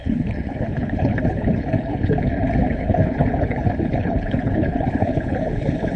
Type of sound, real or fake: fake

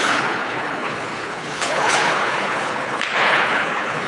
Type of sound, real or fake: fake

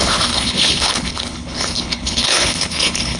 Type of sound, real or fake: fake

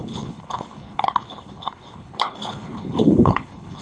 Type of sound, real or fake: fake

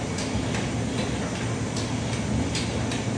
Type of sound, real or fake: real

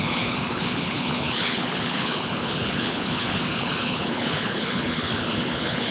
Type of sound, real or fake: fake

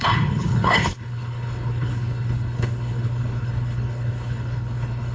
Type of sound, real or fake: fake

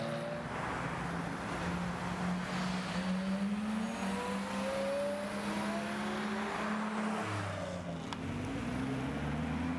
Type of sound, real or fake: real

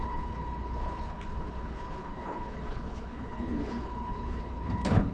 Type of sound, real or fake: fake